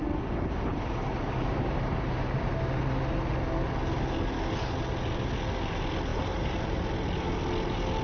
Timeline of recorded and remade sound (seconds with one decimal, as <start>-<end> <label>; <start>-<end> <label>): 0.0-0.7 recorded; 0.7-2.5 remade; 2.5-6.1 recorded; 6.1-6.8 remade; 6.8-8.0 recorded